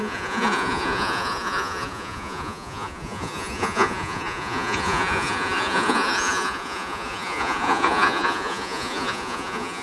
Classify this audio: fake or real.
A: fake